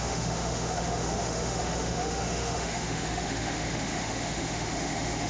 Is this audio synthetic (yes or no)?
yes